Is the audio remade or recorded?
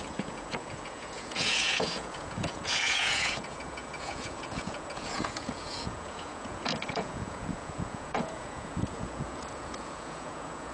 remade